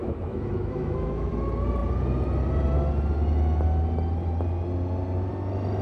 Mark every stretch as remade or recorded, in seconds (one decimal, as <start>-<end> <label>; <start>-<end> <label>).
0.0-1.3 remade; 1.3-5.8 recorded

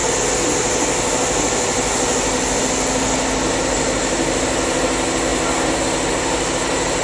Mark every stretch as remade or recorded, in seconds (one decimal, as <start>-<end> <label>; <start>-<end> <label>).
0.0-7.0 recorded